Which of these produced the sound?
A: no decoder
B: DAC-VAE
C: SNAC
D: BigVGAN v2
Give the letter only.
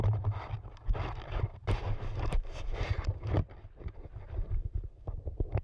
A